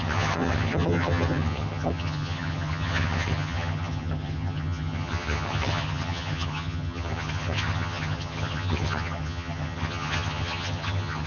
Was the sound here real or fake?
fake